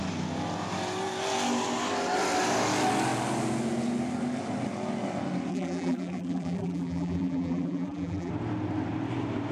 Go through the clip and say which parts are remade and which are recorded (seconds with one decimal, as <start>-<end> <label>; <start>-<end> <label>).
0.0-5.5 recorded; 5.5-8.3 remade; 8.3-9.5 recorded